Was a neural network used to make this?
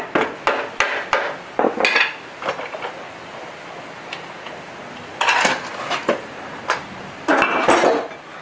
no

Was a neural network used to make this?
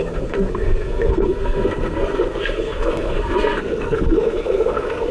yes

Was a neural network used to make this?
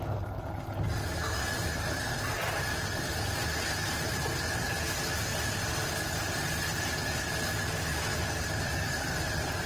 no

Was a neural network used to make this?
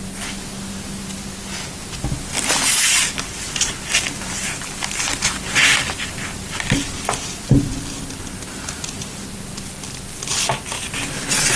no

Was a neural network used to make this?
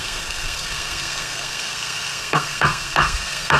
yes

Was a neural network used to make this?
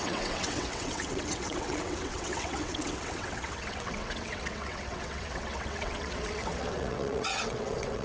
yes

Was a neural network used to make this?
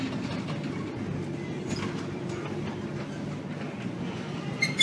no